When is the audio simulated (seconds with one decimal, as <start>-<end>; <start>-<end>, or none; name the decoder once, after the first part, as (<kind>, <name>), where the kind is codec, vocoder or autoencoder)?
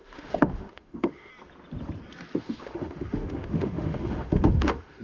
0.0-1.3 (autoencoder, DAC-VAE); 2.4-5.0